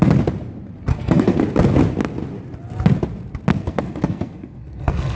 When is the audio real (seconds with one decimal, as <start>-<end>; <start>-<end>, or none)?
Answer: 0.0-0.9; 1.4-3.5

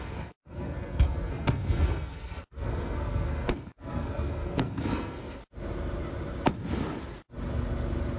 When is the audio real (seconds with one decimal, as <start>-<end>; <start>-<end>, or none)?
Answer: 5.4-8.2